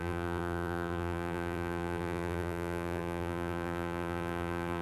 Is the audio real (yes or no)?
no